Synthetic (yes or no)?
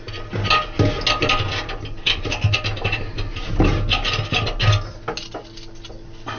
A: no